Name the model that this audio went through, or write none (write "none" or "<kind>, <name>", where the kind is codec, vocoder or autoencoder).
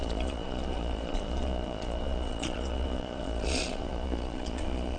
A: vocoder, Vocos